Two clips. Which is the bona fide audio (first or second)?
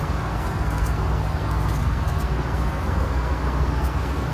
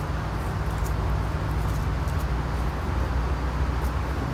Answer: second